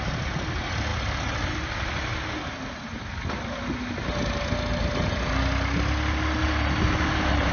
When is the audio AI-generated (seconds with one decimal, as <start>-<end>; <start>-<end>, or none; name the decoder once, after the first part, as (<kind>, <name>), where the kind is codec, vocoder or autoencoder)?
6.4-7.5 (vocoder, BigVGAN v2)